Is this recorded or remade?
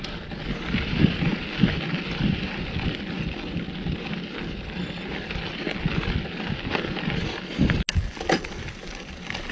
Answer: recorded